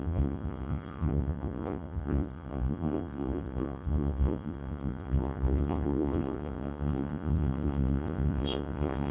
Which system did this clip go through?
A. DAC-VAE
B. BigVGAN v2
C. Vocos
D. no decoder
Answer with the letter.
C